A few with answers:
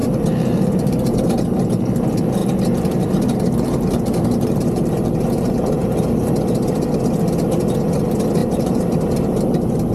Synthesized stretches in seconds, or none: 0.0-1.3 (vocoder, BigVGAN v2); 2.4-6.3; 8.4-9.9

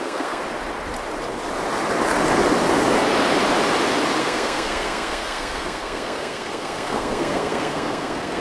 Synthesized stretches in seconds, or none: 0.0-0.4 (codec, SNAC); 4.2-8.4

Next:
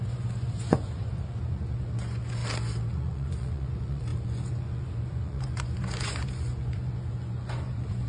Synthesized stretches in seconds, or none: 0.0-2.4 (vocoder, Vocos); 2.9-8.1

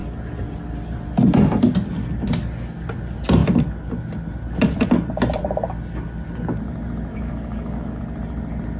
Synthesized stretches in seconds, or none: 7.1-8.0 (codec, DAC)

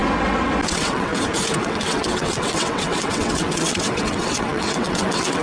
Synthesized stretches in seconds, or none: 0.7-1.1 (vocoder, WaveNeXt); 1.6-5.4

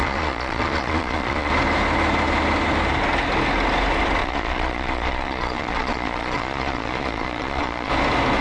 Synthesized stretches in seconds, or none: 0.0-1.5 (vocoder, Vocos); 4.2-7.9

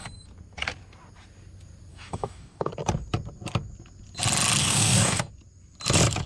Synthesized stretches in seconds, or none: 1.9-2.7 (codec, DAC); 4.6-5.3